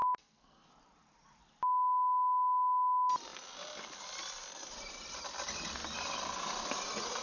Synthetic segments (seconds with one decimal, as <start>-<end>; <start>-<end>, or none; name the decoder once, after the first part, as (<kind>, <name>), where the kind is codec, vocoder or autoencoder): 0.0-0.7 (codec, SNAC)